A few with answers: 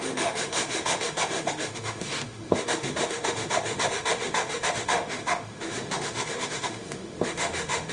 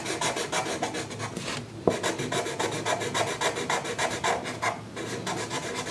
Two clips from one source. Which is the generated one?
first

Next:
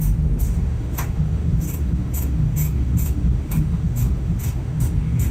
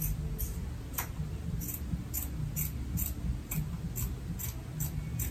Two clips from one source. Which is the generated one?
first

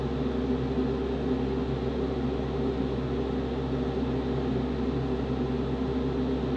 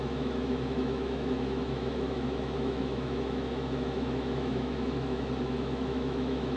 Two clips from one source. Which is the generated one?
second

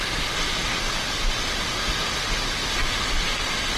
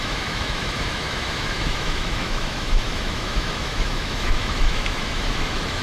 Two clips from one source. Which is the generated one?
second